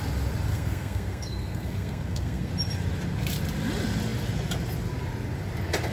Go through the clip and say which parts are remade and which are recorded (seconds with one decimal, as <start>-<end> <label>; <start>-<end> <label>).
0.0-0.5 recorded; 0.5-2.5 remade; 2.5-5.9 recorded